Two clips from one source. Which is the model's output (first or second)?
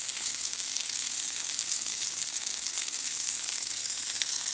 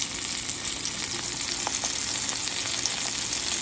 first